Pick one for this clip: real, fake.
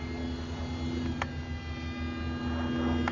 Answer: real